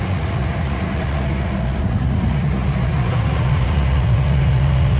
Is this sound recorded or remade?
remade